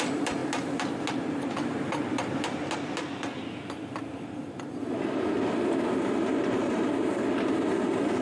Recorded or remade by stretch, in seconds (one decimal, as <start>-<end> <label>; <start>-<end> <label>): 0.0-8.2 recorded